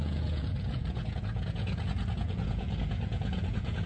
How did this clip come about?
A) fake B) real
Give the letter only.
A